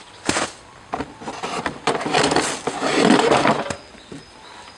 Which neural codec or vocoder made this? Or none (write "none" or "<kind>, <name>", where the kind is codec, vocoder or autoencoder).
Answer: none